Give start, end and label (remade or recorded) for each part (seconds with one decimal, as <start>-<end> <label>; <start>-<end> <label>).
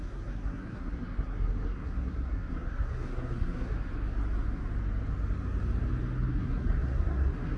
0.0-3.9 remade; 3.9-6.3 recorded; 6.3-7.6 remade